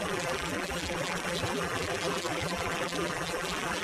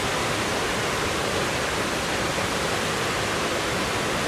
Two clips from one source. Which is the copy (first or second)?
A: first